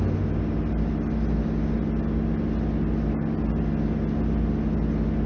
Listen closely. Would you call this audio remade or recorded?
recorded